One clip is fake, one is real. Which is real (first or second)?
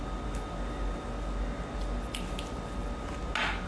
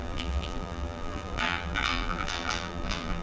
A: first